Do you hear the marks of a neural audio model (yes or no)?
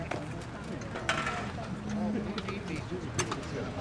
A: no